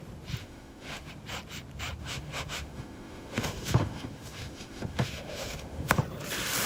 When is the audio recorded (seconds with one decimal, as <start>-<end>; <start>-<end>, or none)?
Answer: 0.0-0.4; 1.1-2.0; 5.9-6.7